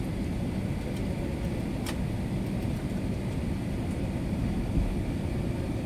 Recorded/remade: recorded